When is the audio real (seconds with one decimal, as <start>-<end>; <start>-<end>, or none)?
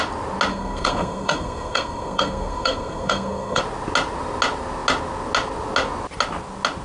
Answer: 0.0-0.5; 3.6-6.8